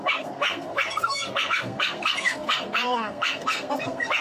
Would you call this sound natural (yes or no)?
no